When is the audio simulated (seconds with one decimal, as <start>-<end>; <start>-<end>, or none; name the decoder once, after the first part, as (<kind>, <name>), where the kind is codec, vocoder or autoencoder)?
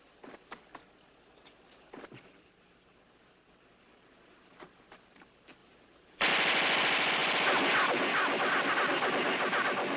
5.6-6.3 (vocoder, BigVGAN v2)